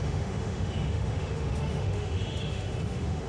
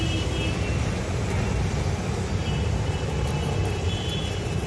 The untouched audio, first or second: second